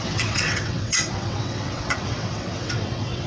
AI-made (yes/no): yes